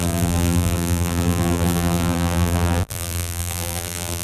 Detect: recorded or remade remade